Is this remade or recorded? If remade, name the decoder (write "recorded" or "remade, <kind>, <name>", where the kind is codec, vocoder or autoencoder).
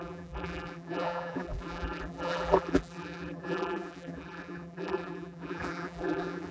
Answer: remade, vocoder, BigVGAN v2